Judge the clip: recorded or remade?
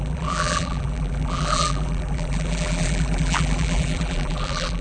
remade